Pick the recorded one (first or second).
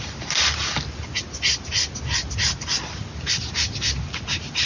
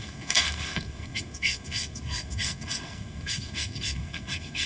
first